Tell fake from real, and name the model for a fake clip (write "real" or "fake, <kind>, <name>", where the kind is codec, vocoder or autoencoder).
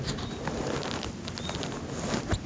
real